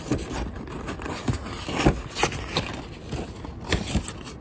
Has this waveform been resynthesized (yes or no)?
no